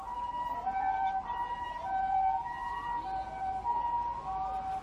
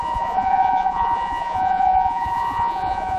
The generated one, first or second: second